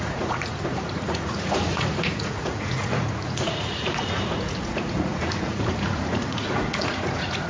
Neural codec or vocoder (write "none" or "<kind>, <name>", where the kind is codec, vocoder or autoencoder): vocoder, Vocos